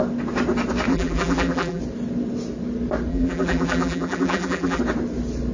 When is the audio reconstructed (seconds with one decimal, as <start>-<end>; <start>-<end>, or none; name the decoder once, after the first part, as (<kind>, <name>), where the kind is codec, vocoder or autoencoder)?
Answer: 0.9-1.8 (vocoder, BigVGAN v2); 3.1-4.8